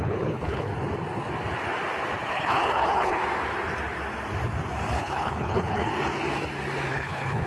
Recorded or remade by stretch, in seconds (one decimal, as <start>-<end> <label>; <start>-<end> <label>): 0.0-0.7 remade; 0.7-2.3 recorded; 2.3-3.2 remade; 3.2-4.9 recorded; 4.9-5.9 remade; 5.9-6.9 recorded; 6.9-7.5 remade